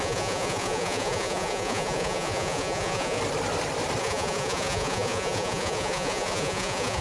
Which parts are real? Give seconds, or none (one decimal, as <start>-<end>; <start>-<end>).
3.2-4.0